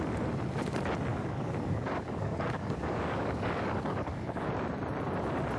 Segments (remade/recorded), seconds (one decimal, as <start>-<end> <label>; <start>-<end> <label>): 0.0-1.1 recorded; 1.1-4.5 remade; 4.5-5.6 recorded